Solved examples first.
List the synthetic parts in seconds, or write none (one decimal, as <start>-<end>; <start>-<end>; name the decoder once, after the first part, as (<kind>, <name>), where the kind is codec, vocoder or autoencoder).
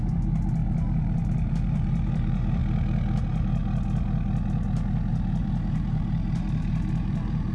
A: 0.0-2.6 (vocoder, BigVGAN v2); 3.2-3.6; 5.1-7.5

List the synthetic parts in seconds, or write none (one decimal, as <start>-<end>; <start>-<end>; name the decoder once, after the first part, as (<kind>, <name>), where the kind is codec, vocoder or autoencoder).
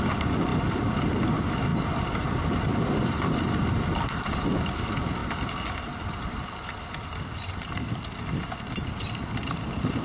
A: 0.5-1.2 (vocoder, BigVGAN v2); 5.2-6.0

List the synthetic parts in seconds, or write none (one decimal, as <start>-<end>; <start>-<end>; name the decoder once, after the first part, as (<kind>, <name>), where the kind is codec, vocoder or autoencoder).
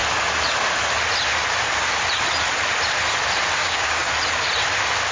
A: 3.6-4.1 (codec, DAC)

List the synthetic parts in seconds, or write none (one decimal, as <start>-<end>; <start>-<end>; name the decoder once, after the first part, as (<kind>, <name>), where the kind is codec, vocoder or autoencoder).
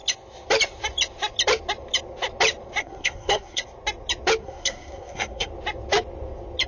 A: 2.8-3.6 (codec, SNAC); 4.4-5.5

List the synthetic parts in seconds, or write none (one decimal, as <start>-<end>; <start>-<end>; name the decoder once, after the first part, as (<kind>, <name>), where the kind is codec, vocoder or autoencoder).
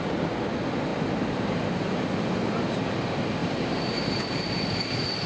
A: 0.9-1.6 (vocoder, BigVGAN v2); 3.4-4.2